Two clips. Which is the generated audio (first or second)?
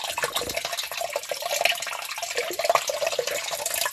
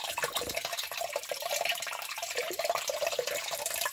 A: second